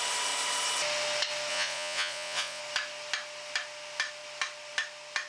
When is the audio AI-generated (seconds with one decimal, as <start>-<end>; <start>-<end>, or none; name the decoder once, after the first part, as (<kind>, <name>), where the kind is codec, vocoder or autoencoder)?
1.5-2.6 (vocoder, Vocos)